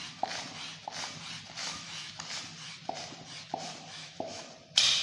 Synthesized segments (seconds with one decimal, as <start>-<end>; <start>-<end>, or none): 1.6-2.1; 4.0-4.5